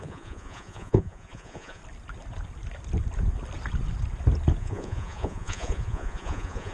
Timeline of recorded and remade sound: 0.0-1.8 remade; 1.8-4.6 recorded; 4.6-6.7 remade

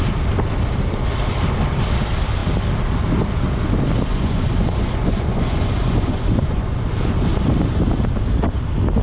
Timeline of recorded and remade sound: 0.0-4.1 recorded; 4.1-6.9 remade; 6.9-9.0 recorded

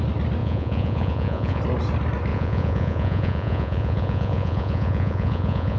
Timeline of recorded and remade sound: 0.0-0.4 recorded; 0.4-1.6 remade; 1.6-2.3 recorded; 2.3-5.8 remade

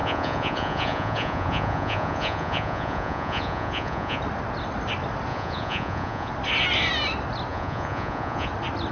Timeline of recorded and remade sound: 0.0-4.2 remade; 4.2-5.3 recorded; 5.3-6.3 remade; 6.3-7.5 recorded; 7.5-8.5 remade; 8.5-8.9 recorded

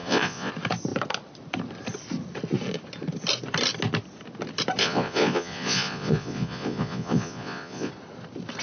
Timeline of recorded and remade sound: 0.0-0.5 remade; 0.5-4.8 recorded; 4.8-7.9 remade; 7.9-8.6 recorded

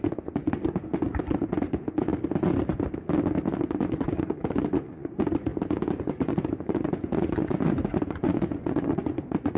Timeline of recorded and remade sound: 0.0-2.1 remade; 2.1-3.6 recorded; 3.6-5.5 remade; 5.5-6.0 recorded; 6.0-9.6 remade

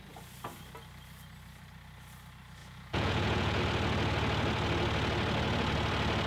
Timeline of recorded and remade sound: 0.0-2.6 recorded; 2.6-3.6 remade; 3.6-6.3 recorded